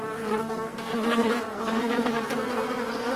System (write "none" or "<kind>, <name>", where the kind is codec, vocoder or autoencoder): codec, SNAC